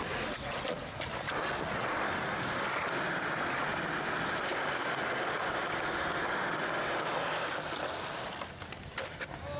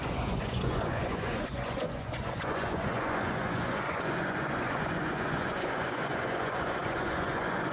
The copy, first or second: second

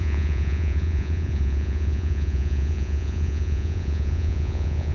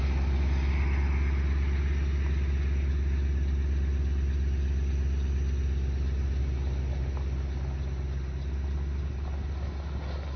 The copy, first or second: first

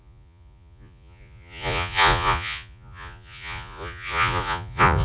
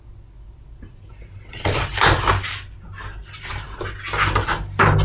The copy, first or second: first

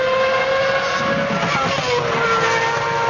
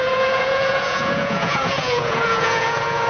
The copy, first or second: second